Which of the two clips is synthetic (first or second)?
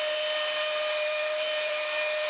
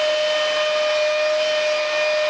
first